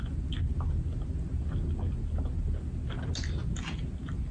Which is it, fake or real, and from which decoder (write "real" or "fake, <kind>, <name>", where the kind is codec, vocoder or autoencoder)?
real